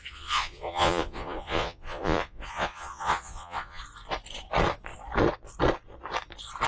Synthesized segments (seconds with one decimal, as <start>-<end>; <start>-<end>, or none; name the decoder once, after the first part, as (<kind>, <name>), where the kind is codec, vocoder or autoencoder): 0.0-3.8 (vocoder, Vocos)